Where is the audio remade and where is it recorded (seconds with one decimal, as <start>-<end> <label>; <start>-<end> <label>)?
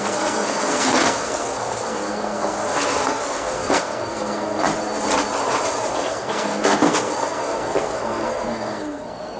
0.0-4.7 remade; 4.7-5.9 recorded; 5.9-9.4 remade